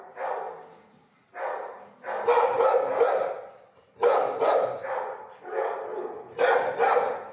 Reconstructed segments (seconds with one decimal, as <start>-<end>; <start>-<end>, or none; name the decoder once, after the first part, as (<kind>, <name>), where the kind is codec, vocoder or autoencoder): none